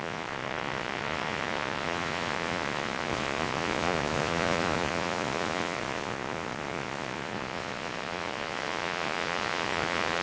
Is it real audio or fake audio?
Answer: fake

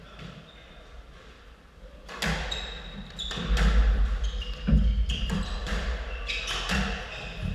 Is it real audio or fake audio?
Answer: real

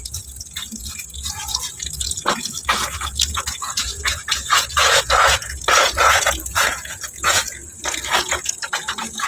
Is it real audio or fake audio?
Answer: fake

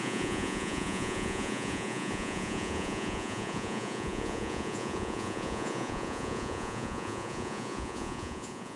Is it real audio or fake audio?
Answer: fake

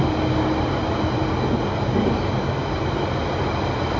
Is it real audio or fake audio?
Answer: real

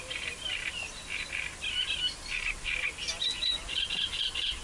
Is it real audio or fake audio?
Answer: real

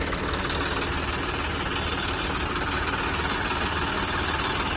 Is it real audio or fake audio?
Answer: real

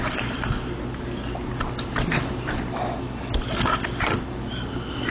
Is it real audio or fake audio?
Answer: real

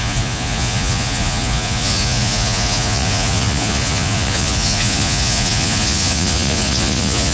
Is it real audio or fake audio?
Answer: fake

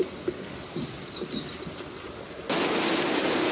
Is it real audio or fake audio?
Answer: real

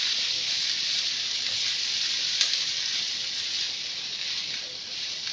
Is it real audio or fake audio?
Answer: real